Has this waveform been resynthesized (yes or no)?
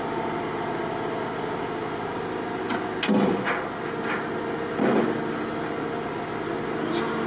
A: no